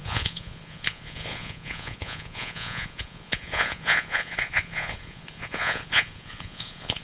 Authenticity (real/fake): fake